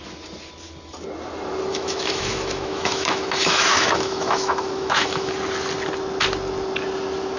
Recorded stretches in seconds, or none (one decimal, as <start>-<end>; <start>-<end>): 0.0-1.7; 5.3-7.4